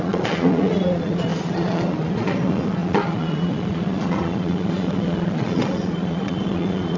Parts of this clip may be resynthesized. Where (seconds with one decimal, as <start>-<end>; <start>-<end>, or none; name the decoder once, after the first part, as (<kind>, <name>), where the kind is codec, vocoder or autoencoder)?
0.0-7.0 (vocoder, Vocos)